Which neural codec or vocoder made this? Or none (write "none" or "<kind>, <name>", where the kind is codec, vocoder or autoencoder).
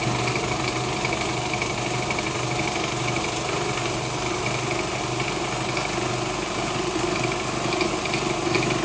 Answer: none